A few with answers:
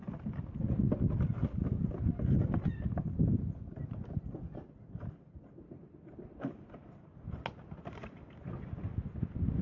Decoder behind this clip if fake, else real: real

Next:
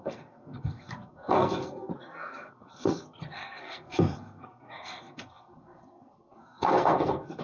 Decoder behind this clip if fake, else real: fake, codec, SNAC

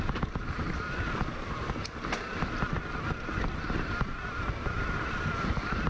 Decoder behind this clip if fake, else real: real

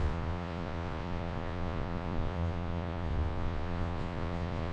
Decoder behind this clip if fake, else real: fake, vocoder, Vocos